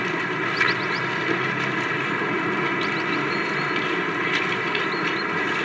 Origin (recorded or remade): recorded